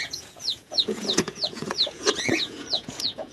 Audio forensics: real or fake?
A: fake